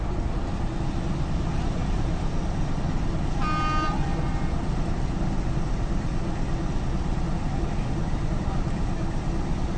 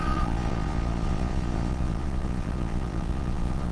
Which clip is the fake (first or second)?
second